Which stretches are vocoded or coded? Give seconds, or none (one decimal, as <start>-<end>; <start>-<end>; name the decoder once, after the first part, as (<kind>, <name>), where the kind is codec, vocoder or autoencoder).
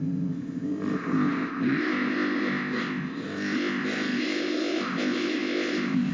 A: 0.0-6.1 (codec, ZipCodec)